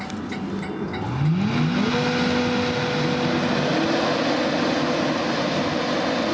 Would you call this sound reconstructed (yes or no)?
no